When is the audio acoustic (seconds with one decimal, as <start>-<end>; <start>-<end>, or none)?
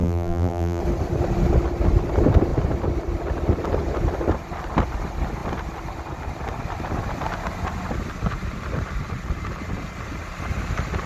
0.8-11.1